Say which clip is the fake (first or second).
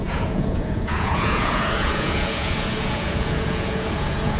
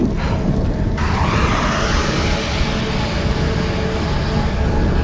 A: first